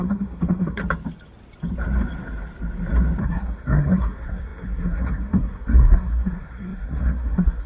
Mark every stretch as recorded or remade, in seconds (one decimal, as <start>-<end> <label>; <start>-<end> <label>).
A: 0.0-0.8 remade; 0.8-3.2 recorded; 3.2-7.7 remade